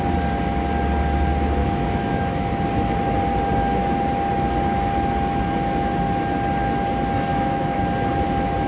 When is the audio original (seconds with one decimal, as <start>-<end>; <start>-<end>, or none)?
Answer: 0.0-1.6; 2.5-7.3; 7.8-8.7